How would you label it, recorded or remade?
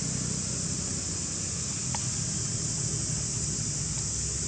recorded